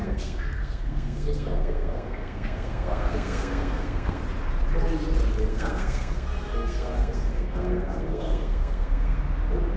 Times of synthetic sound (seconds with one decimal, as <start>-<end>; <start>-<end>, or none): 0.0-4.2; 5.5-9.2